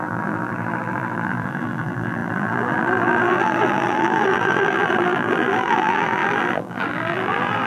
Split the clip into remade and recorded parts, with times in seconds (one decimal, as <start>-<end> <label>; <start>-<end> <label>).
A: 0.0-7.7 remade